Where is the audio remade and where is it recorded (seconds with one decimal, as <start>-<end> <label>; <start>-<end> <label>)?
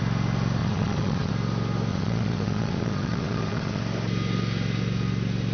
0.0-0.6 recorded; 0.6-1.3 remade; 1.3-1.9 recorded; 1.9-3.8 remade; 3.8-5.5 recorded